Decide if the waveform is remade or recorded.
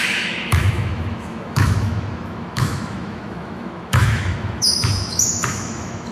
remade